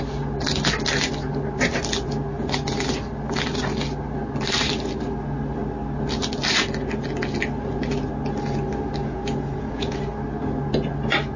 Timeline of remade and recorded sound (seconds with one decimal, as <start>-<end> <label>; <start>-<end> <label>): 0.0-9.0 recorded; 9.0-10.0 remade; 10.0-11.4 recorded